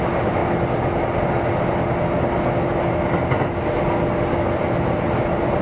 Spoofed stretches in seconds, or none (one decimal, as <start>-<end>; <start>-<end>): none